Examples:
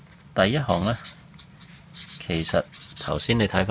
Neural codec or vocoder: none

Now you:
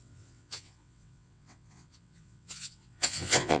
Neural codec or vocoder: vocoder, WaveNeXt